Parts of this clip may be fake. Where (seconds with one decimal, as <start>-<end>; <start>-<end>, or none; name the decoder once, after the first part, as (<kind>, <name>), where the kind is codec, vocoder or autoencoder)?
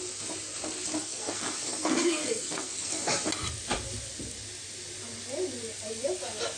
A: 1.0-3.1 (codec, SNAC)